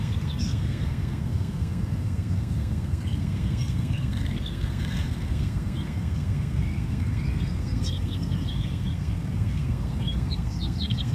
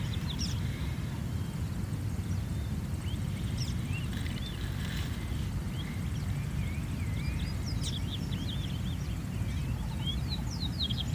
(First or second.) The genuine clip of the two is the second